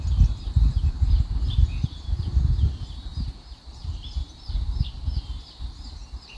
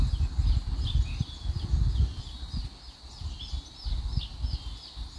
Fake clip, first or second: first